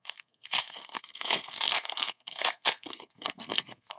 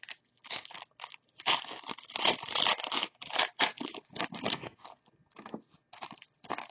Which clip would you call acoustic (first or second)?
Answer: second